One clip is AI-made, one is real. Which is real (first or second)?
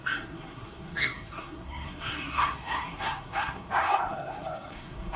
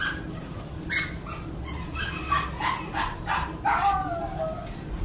second